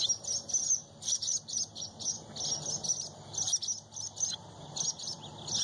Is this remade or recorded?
recorded